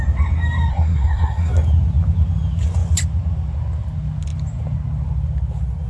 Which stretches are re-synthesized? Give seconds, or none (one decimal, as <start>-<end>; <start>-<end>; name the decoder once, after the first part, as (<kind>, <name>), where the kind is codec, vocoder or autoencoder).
0.7-1.5 (codec, SNAC)